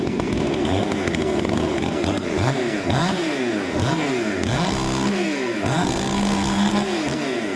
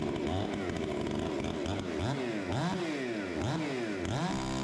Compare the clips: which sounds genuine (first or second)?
second